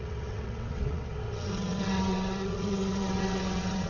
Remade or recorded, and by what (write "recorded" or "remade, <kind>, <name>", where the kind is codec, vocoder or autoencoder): remade, vocoder, WaveNeXt